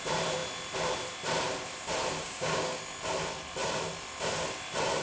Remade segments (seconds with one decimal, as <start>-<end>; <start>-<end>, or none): 2.2-2.8